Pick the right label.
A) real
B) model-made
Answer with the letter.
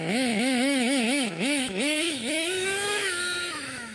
B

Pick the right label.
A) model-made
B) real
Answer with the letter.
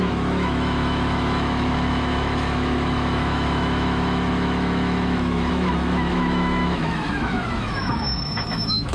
A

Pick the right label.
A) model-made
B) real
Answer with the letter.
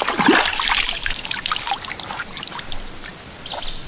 B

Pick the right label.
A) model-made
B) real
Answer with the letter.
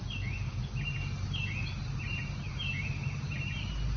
B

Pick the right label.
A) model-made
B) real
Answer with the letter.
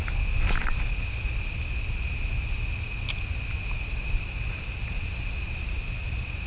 B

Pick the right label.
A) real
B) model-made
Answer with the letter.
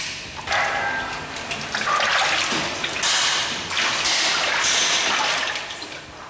A